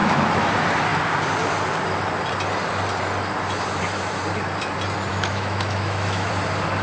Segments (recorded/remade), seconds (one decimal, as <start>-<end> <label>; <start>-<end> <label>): 0.0-0.5 remade; 0.5-5.1 recorded; 5.1-6.3 remade; 6.3-6.8 recorded